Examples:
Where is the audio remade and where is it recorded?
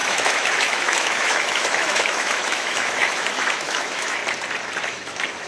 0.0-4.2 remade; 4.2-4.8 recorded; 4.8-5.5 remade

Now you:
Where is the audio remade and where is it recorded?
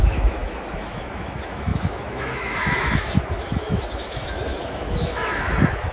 0.0-5.9 remade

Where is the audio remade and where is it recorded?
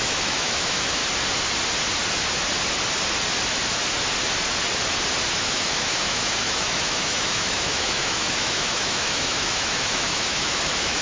0.0-1.0 remade; 1.0-5.3 recorded; 5.3-11.0 remade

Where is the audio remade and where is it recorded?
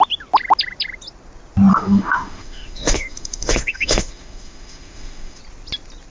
0.0-1.7 recorded; 1.7-5.4 remade; 5.4-6.1 recorded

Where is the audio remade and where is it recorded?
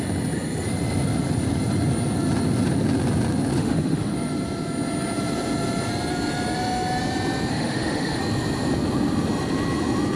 0.0-3.6 recorded; 3.6-4.1 remade; 4.1-7.5 recorded; 7.5-8.2 remade; 8.2-10.2 recorded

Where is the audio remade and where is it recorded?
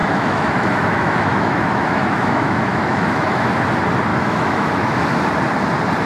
0.0-3.5 remade; 3.5-4.1 recorded; 4.1-5.2 remade; 5.2-6.1 recorded